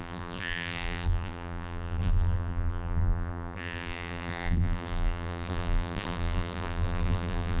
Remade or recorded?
remade